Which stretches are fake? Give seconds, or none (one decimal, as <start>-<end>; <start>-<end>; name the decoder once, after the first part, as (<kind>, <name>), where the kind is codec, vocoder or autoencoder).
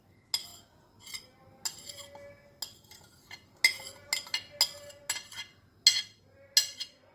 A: none